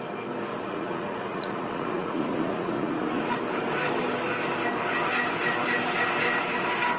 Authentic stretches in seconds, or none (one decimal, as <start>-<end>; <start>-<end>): 0.0-0.5; 3.4-7.0